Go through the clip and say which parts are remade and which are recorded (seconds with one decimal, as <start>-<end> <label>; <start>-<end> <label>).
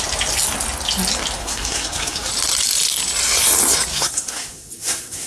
0.0-1.4 recorded; 1.4-2.3 remade; 2.3-3.9 recorded; 3.9-5.3 remade